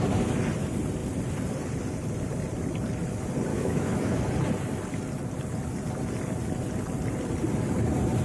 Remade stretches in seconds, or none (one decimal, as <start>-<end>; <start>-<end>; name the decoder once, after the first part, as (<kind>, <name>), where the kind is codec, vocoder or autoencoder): 3.5-4.2 (autoencoder, DAC-VAE)